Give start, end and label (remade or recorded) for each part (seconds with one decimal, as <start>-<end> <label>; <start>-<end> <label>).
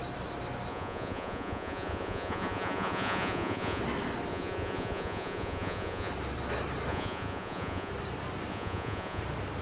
0.0-0.7 recorded; 0.7-3.8 remade; 3.8-4.3 recorded; 4.3-6.1 remade; 6.1-6.9 recorded; 6.9-7.9 remade; 7.9-8.5 recorded; 8.5-9.2 remade; 9.2-9.6 recorded